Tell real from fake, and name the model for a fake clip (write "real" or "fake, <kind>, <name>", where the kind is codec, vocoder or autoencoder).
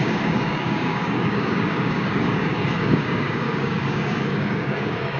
fake, codec, DAC